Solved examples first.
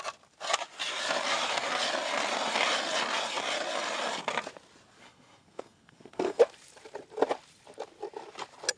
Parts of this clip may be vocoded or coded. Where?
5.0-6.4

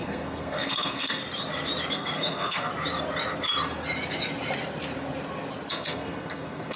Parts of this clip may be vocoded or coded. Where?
0.0-1.2; 1.9-2.7; 5.7-6.8

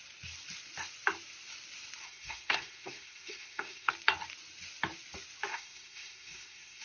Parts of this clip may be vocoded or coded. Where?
2.0-3.9; 5.5-6.8

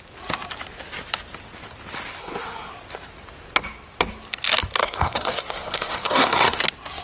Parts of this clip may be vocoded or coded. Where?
2.2-2.7; 4.8-6.6

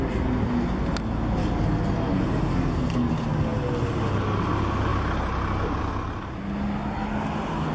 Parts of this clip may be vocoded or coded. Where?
2.5-3.1